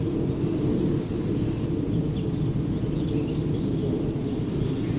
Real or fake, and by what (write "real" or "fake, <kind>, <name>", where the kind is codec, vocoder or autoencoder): real